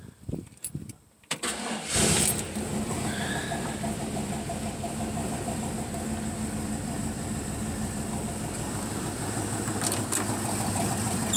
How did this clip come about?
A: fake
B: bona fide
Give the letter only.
A